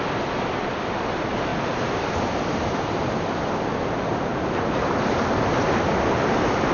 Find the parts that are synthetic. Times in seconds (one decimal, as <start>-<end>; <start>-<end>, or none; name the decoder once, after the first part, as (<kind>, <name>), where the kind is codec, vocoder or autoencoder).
1.5-2.8 (vocoder, BigVGAN v2); 4.3-5.8